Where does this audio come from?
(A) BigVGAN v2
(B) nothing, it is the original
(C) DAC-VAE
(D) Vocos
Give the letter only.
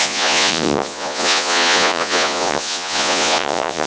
D